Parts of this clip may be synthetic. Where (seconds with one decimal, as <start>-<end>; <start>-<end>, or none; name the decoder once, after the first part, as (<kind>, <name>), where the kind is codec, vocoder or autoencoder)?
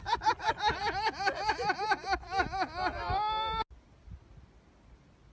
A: none